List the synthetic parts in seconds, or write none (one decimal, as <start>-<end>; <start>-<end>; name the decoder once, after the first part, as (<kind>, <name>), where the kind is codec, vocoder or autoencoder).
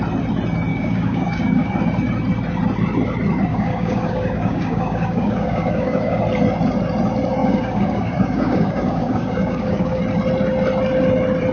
0.7-1.7 (codec, DAC); 3.5-6.2; 7.4-10.0